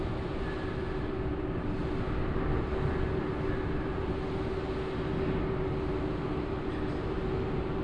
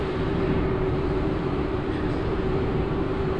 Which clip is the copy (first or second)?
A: second